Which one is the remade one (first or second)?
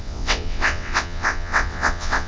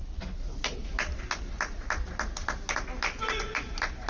first